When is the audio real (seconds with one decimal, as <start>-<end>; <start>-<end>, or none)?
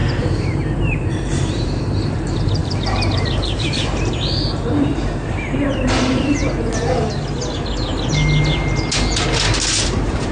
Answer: 6.4-9.8